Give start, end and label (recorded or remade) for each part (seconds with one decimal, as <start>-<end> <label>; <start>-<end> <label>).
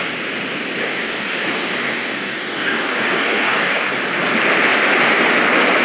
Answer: 0.0-0.8 recorded; 0.8-3.9 remade; 3.9-5.8 recorded